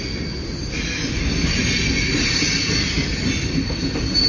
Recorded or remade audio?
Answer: recorded